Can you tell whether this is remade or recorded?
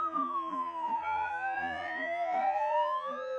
remade